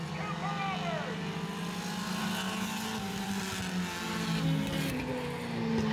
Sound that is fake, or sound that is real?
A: real